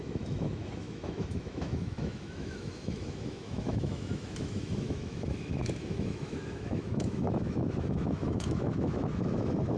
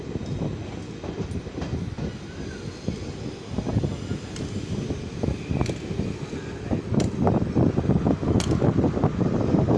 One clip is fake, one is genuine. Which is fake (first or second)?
first